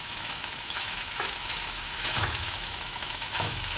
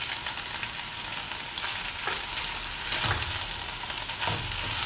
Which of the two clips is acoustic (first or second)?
second